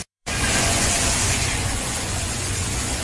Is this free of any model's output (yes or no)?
no